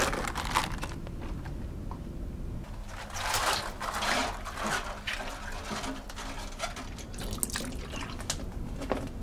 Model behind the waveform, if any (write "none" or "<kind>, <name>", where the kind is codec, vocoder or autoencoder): none